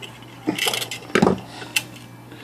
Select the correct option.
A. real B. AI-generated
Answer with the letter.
A